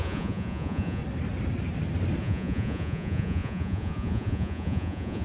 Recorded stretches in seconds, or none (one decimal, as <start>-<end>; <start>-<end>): 1.0-2.2